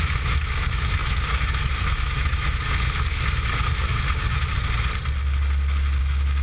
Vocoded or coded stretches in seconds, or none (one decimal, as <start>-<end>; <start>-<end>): 0.0-4.5; 6.0-6.4